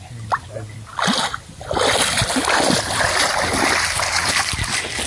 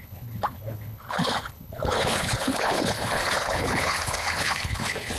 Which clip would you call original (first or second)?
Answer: first